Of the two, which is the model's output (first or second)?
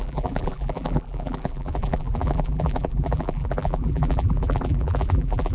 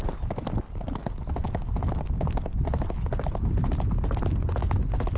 first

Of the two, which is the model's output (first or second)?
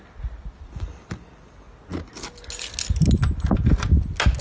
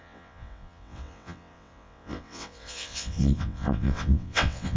second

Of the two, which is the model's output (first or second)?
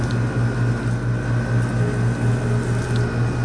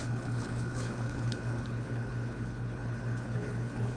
second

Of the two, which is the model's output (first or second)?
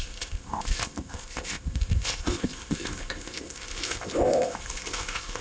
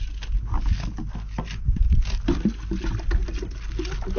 first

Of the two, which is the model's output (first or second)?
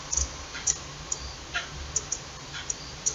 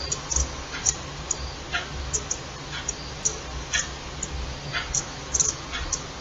first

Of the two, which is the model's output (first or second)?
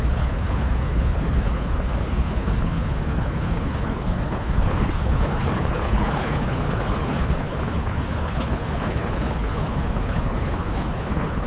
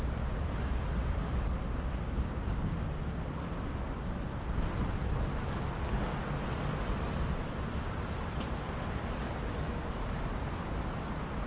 first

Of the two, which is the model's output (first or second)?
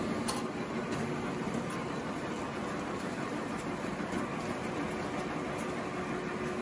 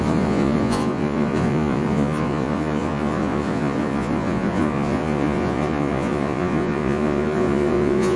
second